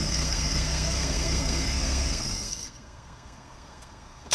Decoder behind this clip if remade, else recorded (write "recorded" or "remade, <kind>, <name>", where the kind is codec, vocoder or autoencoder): remade, codec, SNAC